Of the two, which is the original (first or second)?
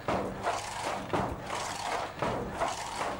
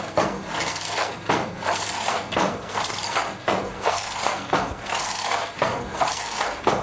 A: first